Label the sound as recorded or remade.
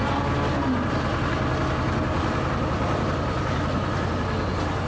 recorded